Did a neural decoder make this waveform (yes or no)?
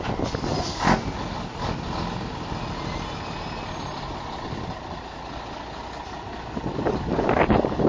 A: no